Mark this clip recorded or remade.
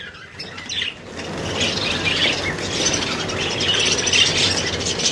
recorded